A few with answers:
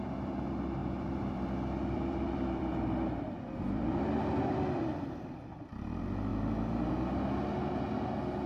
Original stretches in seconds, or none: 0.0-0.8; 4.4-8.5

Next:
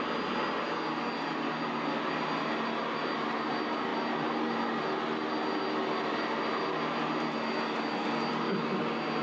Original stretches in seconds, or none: 0.0-9.2

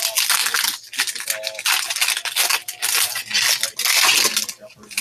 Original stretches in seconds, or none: 0.0-5.0

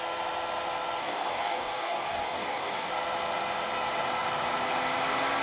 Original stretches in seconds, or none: 0.0-1.0; 2.9-5.4

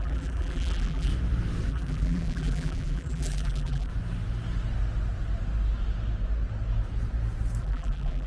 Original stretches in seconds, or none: 1.1-1.7; 3.9-7.6

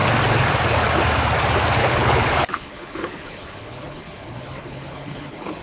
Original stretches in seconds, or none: 0.0-1.8